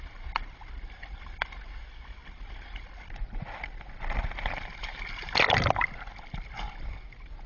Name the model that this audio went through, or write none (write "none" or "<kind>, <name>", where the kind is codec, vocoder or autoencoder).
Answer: none